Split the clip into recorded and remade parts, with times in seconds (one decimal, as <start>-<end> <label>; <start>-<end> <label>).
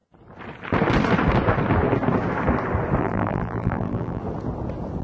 0.0-3.0 recorded; 3.0-4.2 remade; 4.2-5.0 recorded